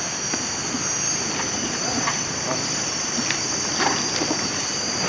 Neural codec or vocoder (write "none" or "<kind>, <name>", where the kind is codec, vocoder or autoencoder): vocoder, BigVGAN v2